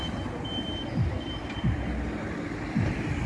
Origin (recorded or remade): recorded